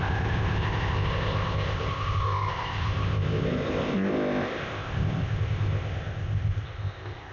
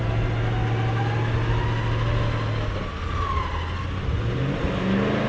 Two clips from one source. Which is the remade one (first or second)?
first